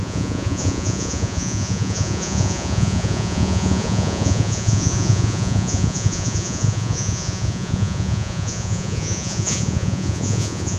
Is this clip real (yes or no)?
no